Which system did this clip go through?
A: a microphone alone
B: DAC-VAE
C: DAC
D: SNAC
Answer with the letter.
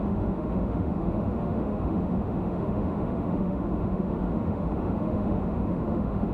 B